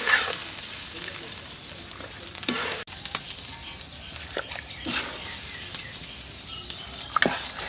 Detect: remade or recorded recorded